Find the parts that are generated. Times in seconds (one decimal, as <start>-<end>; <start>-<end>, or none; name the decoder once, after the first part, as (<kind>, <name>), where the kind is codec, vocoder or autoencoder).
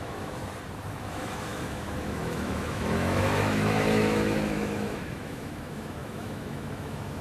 0.0-0.4 (autoencoder, DAC-VAE); 1.0-7.2